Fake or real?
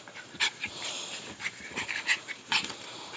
fake